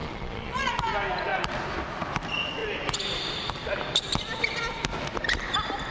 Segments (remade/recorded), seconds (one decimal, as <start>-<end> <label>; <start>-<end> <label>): 0.0-0.7 remade; 0.7-5.9 recorded